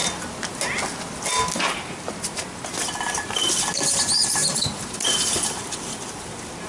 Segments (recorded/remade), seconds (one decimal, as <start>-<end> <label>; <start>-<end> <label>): 0.0-4.4 recorded; 4.4-5.6 remade; 5.6-6.7 recorded